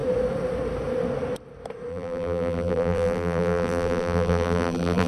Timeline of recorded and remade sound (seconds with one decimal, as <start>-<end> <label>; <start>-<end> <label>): 0.0-1.9 recorded; 1.9-5.1 remade